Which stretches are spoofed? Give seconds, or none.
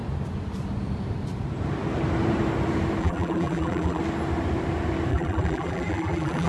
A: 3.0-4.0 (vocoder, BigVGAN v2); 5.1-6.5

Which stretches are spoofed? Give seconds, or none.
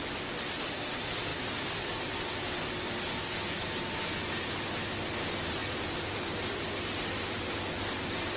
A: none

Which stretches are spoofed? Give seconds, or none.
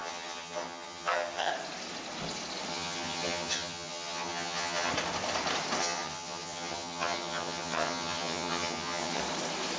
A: 0.0-1.5 (vocoder, HiFi-GAN); 2.7-4.9; 5.8-9.2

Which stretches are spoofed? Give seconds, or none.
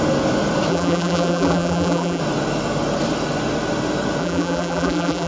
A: 0.7-2.2 (vocoder, BigVGAN v2); 4.2-5.3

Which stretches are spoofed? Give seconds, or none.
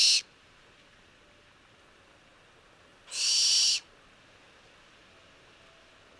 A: none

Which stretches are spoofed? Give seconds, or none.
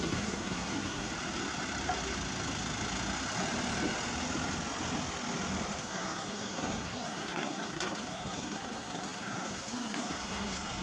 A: 0.0-1.1 (codec, SNAC); 5.8-10.8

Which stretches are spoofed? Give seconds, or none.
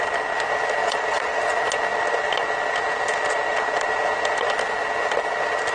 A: 0.8-1.4 (vocoder, Vocos)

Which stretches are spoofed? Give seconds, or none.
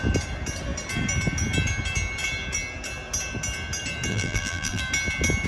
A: 4.1-4.8 (vocoder, BigVGAN v2)